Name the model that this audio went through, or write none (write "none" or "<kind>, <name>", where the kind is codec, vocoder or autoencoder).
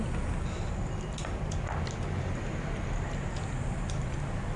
none